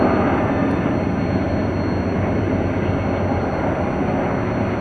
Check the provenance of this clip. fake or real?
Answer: real